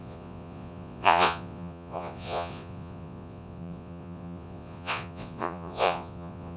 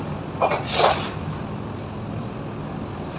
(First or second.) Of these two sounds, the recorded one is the second